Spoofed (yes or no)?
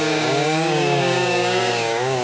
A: yes